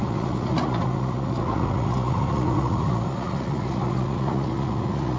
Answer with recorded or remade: remade